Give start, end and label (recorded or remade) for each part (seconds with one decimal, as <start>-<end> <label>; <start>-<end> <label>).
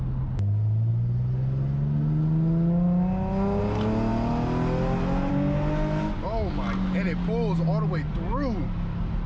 0.0-9.3 recorded